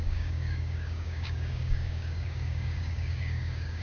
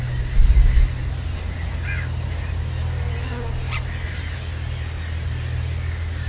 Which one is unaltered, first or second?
second